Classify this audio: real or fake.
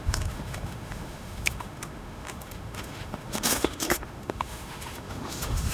fake